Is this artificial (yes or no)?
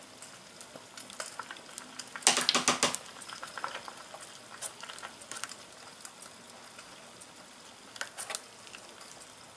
no